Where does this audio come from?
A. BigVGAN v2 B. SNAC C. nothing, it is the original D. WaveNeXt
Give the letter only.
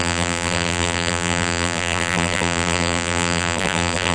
A